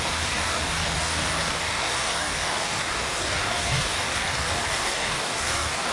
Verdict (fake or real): fake